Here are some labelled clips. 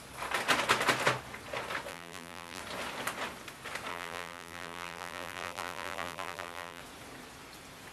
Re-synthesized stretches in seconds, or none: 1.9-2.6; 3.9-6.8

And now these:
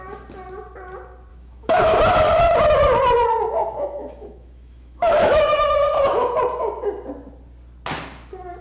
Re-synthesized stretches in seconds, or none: 1.3-1.8; 3.6-6.4

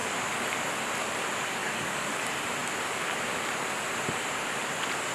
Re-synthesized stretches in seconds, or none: 1.6-2.2

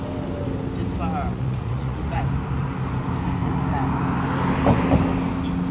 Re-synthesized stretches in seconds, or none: 1.3-2.2